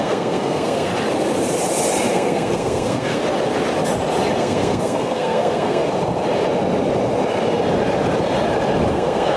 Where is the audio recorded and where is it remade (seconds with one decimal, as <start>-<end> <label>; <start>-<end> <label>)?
0.0-0.9 remade; 0.9-2.1 recorded; 2.1-3.2 remade; 3.2-4.4 recorded; 4.4-5.8 remade; 5.8-8.9 recorded; 8.9-9.4 remade